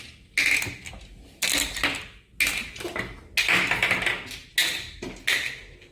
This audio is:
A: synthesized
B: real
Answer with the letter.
B